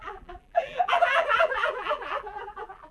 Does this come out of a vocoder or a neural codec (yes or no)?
yes